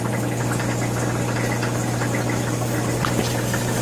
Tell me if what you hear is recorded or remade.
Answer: recorded